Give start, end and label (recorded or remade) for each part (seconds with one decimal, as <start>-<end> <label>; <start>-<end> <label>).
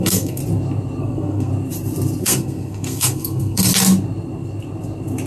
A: 0.0-0.4 remade; 0.4-1.0 recorded; 1.0-1.5 remade; 1.5-2.2 recorded; 2.2-3.7 remade; 3.7-5.3 recorded